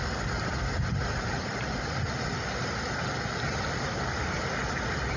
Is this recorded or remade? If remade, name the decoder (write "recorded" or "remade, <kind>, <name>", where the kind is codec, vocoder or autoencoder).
recorded